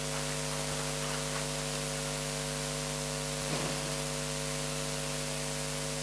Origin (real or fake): real